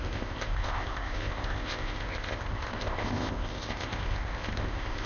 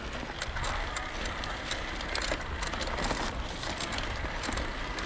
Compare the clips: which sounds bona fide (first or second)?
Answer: second